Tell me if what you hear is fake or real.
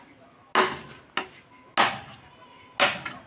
real